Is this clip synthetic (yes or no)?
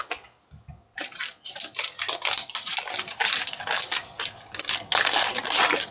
no